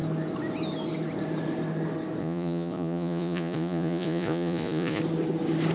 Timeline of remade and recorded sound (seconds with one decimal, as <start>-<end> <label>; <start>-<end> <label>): 0.0-2.2 recorded; 2.2-5.0 remade; 5.0-5.7 recorded